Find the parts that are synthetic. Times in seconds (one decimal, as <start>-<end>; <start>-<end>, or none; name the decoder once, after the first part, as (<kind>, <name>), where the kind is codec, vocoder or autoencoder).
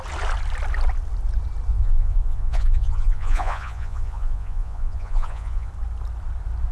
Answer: 1.7-5.7 (vocoder, Vocos)